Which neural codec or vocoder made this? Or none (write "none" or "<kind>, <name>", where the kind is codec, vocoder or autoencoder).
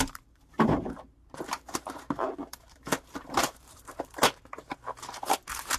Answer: vocoder, BigVGAN v2